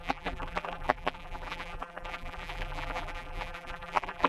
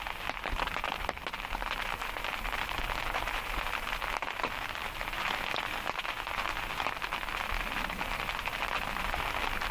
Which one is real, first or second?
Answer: second